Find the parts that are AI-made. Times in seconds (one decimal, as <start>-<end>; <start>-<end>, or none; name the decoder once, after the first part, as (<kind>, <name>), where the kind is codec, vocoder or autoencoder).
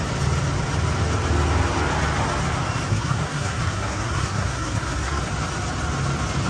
2.9-5.2 (codec, SNAC)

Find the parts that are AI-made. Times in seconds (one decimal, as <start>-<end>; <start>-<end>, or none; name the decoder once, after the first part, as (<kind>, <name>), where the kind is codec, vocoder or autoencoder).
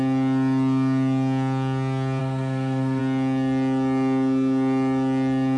2.2-3.0 (codec, SNAC)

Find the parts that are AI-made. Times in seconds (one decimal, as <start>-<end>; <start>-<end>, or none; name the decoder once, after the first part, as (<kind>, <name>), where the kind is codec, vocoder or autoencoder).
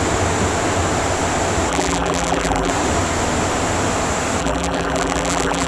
1.7-2.7 (vocoder, BigVGAN v2); 4.4-5.7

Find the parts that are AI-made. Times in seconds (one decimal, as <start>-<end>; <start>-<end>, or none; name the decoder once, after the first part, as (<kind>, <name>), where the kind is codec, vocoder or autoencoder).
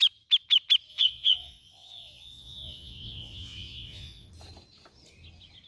0.9-4.3 (vocoder, Vocos)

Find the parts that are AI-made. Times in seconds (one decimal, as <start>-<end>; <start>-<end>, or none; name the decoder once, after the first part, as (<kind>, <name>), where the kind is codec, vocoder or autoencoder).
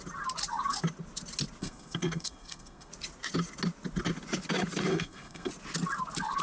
1.6-2.9 (codec, SNAC); 4.9-5.5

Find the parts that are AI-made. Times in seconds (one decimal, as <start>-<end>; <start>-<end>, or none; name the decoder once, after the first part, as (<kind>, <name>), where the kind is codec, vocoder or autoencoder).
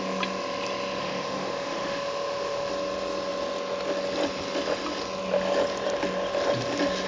1.0-2.7 (autoencoder, DAC-VAE)